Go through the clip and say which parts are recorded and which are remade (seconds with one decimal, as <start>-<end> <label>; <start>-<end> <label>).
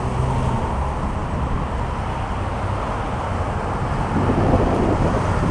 0.0-5.5 recorded